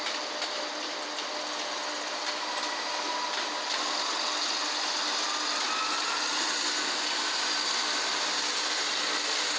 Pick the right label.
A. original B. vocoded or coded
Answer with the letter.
A